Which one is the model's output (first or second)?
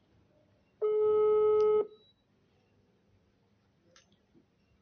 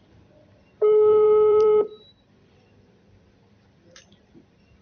second